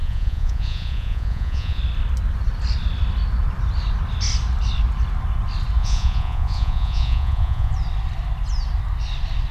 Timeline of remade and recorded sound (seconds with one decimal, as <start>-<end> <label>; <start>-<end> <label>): 0.0-1.8 remade; 1.8-5.8 recorded; 5.8-7.7 remade; 7.7-9.5 recorded